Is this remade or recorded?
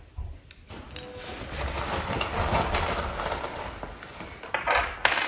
recorded